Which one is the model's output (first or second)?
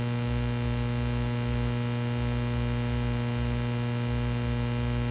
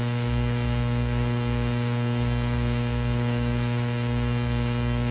second